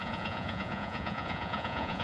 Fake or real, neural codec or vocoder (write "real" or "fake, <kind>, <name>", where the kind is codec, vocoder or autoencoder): fake, vocoder, Vocos